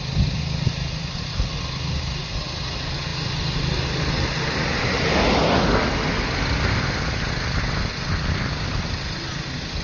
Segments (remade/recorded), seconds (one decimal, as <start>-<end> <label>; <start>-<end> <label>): 0.0-9.8 recorded